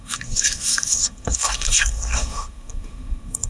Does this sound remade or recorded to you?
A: remade